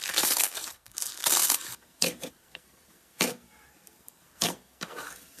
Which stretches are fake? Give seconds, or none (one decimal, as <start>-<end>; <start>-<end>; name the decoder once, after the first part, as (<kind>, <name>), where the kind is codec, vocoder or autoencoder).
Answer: 0.0-5.4 (codec, SNAC)